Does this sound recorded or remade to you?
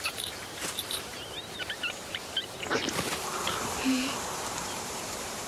remade